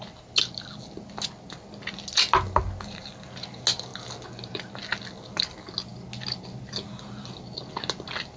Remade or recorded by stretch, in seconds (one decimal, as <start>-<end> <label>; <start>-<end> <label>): 0.0-8.4 recorded

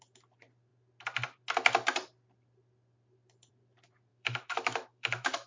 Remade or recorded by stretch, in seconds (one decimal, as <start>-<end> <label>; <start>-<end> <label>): 0.0-4.1 recorded; 4.1-5.5 remade

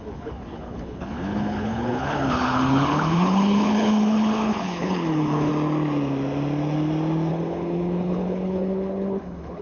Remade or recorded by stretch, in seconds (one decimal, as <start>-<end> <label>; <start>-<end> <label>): 0.0-5.5 remade; 5.5-7.3 recorded; 7.3-9.6 remade